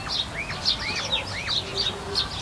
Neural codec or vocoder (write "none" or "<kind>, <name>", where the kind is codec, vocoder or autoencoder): none